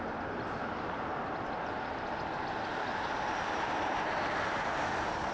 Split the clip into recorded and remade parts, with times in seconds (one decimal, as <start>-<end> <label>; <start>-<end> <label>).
0.0-5.3 recorded